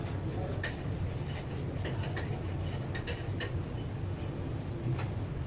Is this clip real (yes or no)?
yes